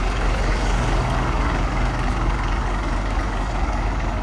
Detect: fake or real fake